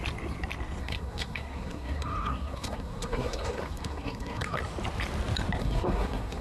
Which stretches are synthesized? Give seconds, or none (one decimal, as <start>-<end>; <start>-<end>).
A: 0.8-4.6; 5.6-6.4